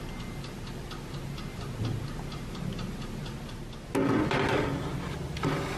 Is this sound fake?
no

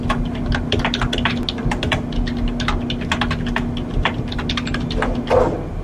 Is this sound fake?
no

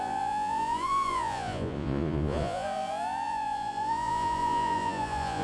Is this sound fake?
yes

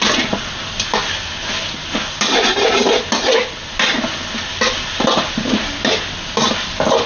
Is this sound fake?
no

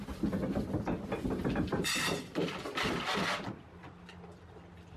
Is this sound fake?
no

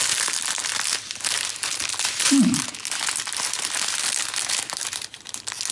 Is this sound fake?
no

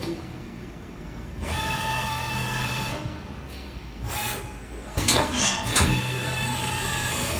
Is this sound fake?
yes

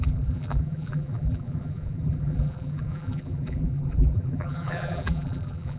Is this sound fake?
yes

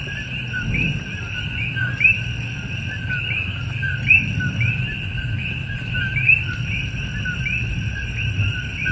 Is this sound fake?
no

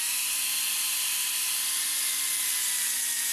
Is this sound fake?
no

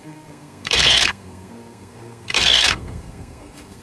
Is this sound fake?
yes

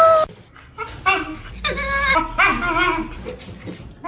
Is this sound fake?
no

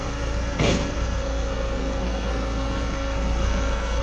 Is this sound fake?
yes